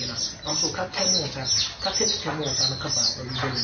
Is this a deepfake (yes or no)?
no